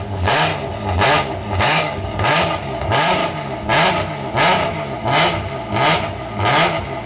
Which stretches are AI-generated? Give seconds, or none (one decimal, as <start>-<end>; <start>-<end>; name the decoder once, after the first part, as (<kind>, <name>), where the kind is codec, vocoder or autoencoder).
0.0-0.5 (codec, DAC); 1.6-3.2

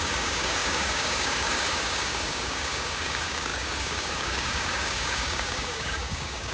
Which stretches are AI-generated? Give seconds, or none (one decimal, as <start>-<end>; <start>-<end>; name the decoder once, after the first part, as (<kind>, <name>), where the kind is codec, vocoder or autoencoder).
0.0-6.5 (codec, DAC)

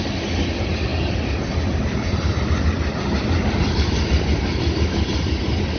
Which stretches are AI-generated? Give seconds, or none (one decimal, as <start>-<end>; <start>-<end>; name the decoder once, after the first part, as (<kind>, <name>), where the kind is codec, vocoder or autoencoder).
none

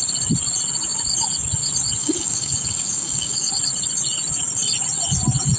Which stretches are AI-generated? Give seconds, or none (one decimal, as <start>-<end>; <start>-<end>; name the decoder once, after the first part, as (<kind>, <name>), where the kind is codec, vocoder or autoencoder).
2.0-3.5 (codec, DAC)

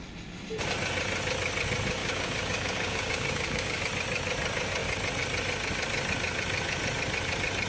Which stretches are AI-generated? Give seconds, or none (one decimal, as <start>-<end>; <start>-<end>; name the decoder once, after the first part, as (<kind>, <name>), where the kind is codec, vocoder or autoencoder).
2.0-3.8 (codec, DAC)

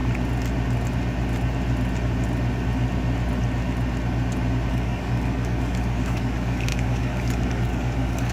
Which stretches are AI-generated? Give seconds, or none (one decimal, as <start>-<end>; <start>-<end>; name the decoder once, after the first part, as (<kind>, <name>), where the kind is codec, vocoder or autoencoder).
4.7-8.3 (codec, DAC)

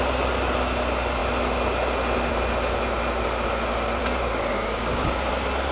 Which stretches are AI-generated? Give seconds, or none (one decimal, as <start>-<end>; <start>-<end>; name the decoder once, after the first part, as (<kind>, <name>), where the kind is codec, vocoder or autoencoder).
4.0-5.3 (codec, DAC)

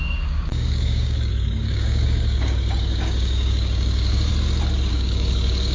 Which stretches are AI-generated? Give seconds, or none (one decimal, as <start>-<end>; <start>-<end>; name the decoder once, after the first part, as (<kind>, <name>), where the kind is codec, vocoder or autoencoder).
0.0-4.3 (codec, DAC); 4.9-5.7